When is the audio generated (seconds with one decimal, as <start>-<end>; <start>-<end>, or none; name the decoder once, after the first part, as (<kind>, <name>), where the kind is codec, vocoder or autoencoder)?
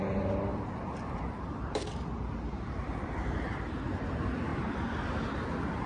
0.5-4.0 (vocoder, BigVGAN v2); 4.5-5.4